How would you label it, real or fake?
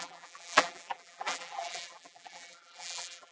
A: fake